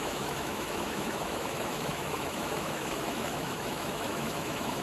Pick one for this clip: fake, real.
fake